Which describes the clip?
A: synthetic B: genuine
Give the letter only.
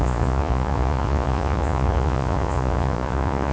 A